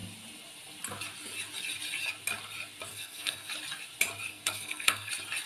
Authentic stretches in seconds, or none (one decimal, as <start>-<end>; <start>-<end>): 0.0-2.9; 3.5-4.3; 5.1-5.5